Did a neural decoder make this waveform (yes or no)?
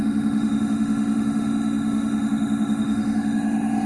yes